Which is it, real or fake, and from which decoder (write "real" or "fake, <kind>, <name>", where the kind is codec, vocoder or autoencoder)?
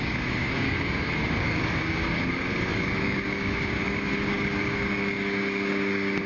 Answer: fake, codec, DAC